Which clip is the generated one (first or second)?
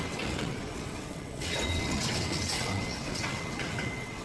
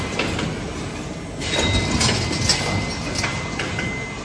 first